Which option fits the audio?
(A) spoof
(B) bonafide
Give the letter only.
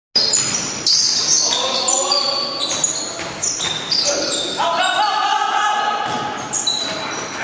B